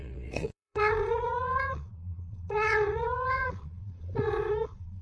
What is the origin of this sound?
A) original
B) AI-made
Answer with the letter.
B